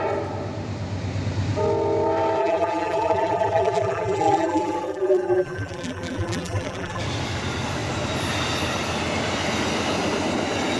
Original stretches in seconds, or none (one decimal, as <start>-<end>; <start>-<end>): 0.0-2.4; 7.0-10.8